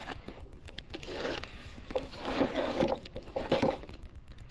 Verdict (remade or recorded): remade